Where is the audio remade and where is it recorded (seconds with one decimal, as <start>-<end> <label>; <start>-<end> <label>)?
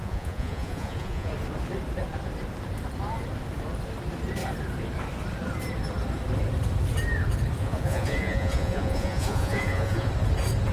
0.0-1.3 remade; 1.3-7.6 recorded; 7.6-10.1 remade; 10.1-10.7 recorded